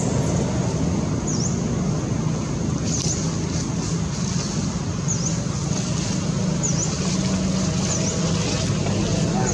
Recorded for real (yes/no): yes